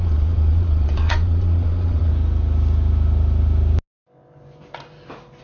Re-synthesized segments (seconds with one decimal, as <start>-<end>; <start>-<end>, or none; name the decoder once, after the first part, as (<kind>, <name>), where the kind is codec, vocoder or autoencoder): 0.0-2.1 (vocoder, Vocos)